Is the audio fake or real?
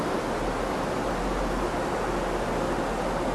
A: real